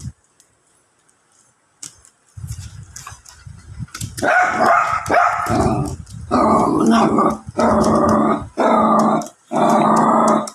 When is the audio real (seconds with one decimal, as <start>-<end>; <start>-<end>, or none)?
0.0-10.5